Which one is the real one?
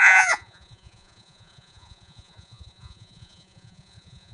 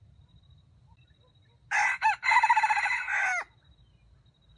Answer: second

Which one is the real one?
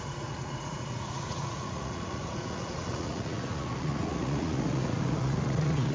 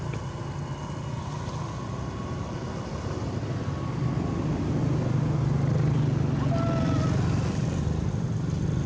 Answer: second